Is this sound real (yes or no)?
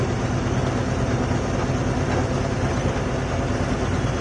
yes